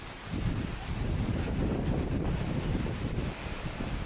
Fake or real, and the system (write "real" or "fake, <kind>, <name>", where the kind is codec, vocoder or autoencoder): fake, vocoder, BigVGAN v2